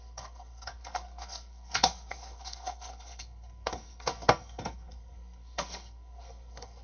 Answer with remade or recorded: remade